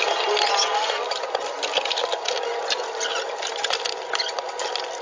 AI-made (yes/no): no